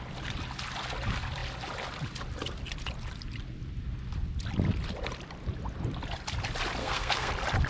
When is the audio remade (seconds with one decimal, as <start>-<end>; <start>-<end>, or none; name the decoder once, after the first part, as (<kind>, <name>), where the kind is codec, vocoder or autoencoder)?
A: 6.8-7.3 (codec, SNAC)